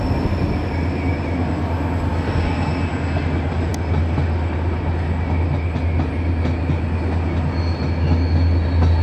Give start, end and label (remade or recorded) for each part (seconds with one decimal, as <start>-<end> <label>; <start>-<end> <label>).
0.0-9.0 recorded